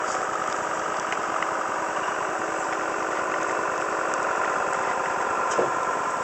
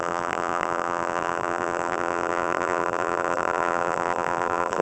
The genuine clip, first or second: first